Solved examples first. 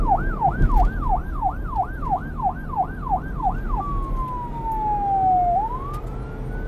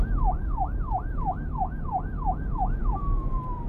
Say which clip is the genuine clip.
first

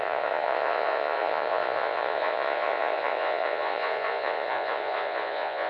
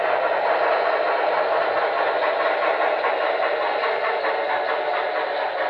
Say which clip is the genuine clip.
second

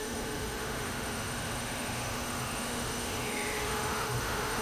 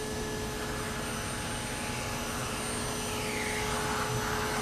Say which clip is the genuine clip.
second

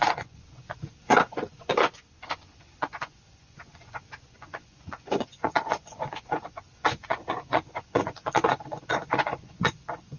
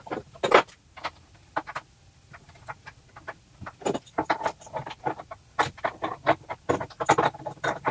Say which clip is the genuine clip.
second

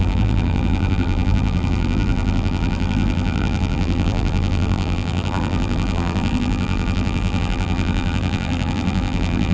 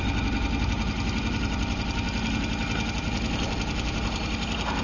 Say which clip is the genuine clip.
second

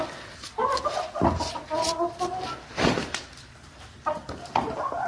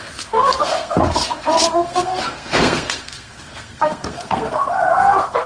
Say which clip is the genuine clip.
first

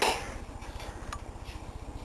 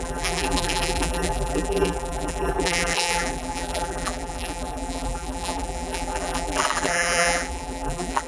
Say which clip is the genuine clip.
first